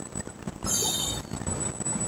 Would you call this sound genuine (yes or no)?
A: yes